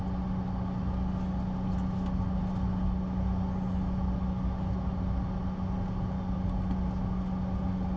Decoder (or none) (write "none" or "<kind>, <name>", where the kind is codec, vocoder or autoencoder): none